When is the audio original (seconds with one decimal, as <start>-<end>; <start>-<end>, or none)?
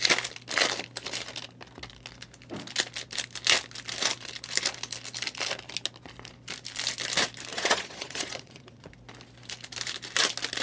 0.0-7.5; 8.9-10.6